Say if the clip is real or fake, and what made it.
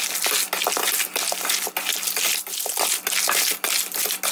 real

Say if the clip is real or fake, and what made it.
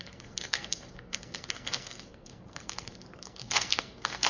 fake, codec, SNAC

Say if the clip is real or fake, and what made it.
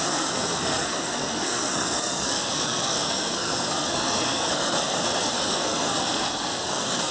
fake, codec, SNAC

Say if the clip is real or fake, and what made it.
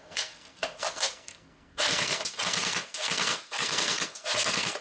fake, codec, SNAC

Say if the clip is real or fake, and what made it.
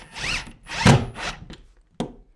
real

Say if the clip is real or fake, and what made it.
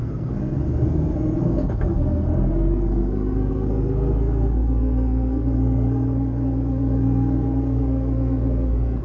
fake, codec, SNAC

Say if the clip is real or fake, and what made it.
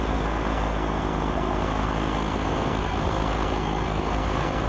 fake, codec, SNAC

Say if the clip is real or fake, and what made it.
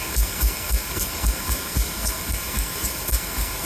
fake, codec, SNAC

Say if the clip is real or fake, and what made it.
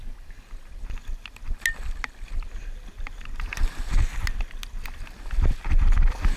real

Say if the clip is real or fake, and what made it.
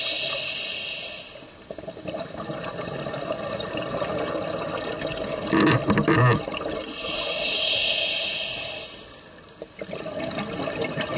real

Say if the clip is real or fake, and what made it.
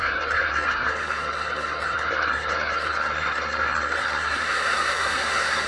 fake, codec, SNAC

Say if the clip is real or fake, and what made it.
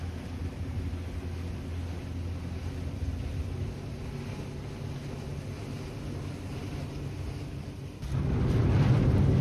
real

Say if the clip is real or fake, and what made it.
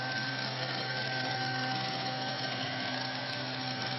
fake, codec, SNAC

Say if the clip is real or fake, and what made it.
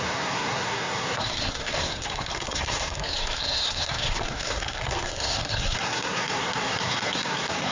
fake, codec, SNAC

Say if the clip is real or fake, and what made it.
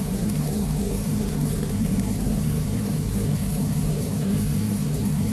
fake, codec, SNAC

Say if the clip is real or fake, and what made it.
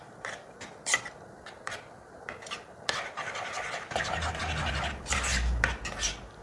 real